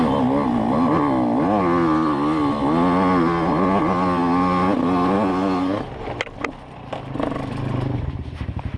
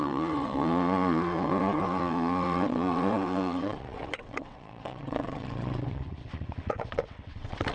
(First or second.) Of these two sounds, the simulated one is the second